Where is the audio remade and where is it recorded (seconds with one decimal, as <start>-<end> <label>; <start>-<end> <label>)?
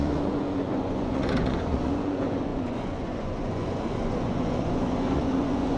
0.0-5.8 remade